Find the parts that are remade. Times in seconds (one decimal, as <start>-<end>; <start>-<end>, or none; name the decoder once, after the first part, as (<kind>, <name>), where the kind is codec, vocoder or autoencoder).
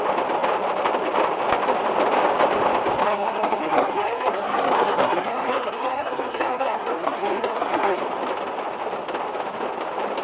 3.0-8.0 (codec, SNAC)